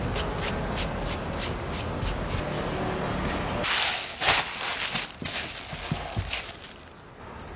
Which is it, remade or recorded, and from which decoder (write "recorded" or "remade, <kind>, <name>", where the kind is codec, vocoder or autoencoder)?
recorded